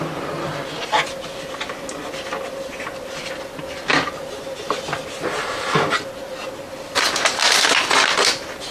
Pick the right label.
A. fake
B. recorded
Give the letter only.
B